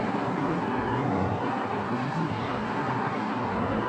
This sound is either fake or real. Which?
fake